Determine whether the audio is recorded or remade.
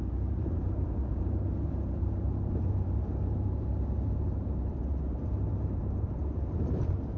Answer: remade